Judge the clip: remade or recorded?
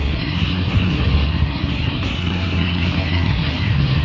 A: remade